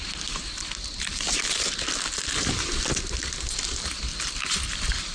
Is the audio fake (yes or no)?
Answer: no